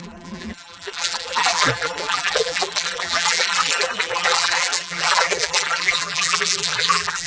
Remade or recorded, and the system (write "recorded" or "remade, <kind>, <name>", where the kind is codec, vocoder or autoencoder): remade, vocoder, BigVGAN v2